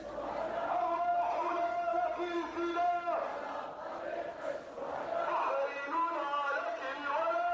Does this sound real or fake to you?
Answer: real